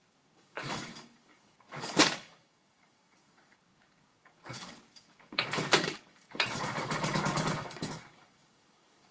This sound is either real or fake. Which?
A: fake